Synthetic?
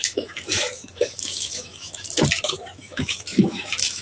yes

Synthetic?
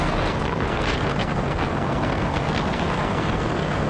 yes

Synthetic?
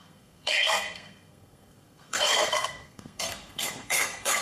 yes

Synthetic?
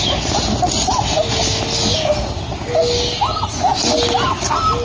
no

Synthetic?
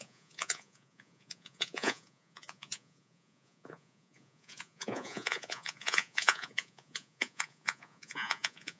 yes